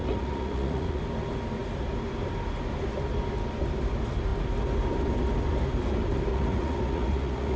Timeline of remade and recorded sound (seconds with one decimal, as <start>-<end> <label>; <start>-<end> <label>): 0.0-1.0 remade; 1.0-6.3 recorded; 6.3-7.6 remade